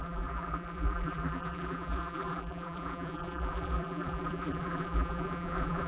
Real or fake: fake